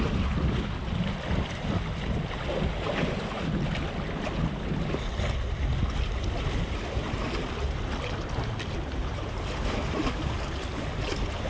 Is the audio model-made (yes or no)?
no